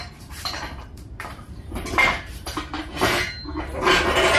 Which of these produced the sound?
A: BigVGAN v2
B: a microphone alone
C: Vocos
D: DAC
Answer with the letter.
A